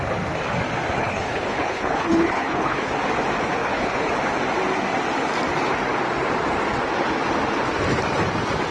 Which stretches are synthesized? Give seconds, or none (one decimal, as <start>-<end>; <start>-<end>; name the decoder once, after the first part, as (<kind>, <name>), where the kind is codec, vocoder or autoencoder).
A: 1.0-3.0 (codec, HILCodec); 3.6-4.1